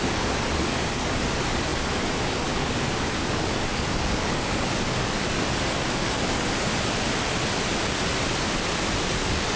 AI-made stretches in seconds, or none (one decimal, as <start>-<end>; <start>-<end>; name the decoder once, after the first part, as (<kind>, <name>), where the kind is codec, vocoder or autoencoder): 0.0-6.7 (codec, DAC); 9.1-9.6